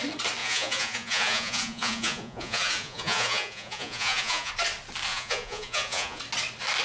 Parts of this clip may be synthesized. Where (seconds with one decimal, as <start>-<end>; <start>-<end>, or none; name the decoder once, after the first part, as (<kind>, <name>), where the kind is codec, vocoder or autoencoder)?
0.4-4.5 (vocoder, Vocos); 5.1-6.2